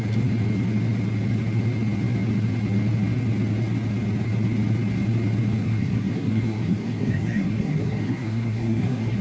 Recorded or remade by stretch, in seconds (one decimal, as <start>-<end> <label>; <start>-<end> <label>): 0.0-5.6 recorded; 5.6-9.2 remade